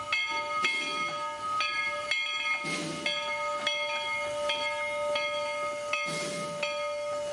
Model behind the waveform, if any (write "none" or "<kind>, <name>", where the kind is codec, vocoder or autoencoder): none